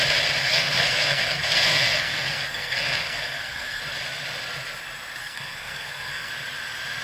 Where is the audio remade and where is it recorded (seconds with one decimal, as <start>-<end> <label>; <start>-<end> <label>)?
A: 0.0-0.4 recorded; 0.4-3.8 remade; 3.8-5.2 recorded; 5.2-6.3 remade; 6.3-7.0 recorded